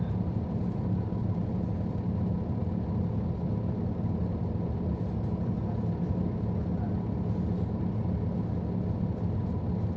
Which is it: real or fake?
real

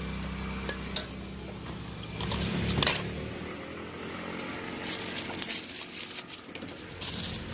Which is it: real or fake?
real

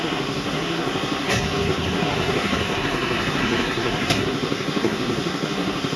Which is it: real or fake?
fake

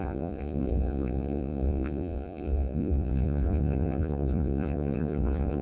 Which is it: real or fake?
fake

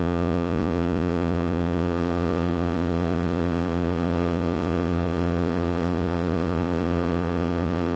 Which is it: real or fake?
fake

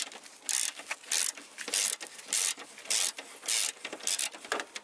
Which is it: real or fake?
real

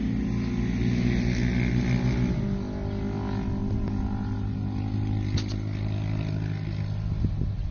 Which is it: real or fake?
real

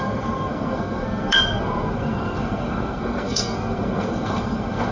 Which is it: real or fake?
fake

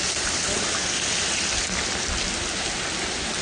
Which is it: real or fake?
real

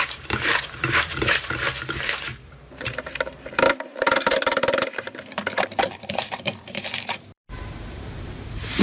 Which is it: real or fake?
fake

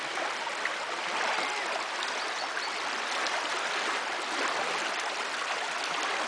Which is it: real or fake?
real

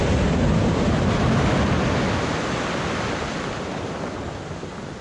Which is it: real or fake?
real